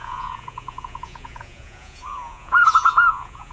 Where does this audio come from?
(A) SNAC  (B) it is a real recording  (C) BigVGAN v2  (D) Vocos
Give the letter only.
D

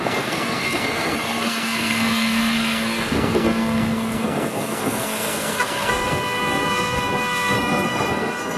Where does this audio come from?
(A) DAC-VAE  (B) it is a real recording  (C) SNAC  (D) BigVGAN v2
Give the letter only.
C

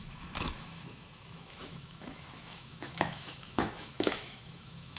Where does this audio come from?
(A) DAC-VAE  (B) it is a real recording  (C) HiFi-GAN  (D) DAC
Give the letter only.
A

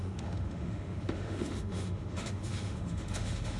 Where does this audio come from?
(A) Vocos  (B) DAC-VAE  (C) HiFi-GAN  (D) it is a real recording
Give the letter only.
B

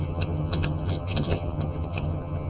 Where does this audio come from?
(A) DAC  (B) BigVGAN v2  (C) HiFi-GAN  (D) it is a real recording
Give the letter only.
C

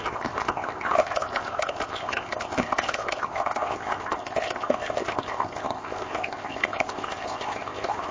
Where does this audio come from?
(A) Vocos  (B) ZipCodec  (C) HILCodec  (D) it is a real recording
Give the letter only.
B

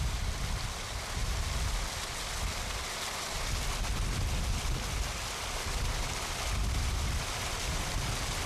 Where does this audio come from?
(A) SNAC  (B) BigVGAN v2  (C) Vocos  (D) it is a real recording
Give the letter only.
D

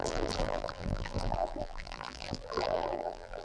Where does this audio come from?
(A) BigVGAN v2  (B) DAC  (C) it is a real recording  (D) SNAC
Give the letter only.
A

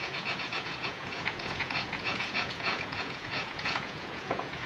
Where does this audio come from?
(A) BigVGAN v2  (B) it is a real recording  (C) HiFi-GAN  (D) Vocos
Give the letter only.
D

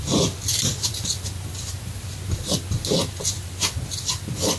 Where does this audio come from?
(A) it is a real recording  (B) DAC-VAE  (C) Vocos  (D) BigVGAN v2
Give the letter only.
A